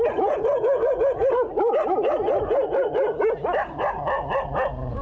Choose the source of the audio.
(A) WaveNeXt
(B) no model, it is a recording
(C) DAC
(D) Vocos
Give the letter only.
B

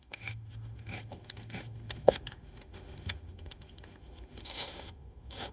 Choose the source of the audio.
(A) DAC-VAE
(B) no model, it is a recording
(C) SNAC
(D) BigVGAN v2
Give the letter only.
A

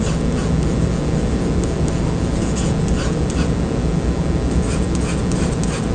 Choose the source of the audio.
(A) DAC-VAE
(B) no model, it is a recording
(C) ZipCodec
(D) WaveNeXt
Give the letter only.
B